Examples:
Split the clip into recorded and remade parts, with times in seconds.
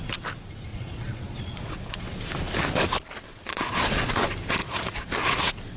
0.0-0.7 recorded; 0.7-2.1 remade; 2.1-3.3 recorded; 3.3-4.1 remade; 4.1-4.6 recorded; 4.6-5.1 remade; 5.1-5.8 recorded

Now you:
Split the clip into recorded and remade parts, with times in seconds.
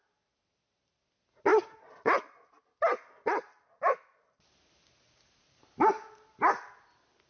0.0-7.3 recorded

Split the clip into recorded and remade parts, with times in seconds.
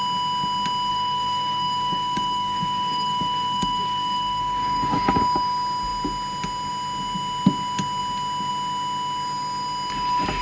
0.0-0.9 recorded; 0.9-5.1 remade; 5.1-10.4 recorded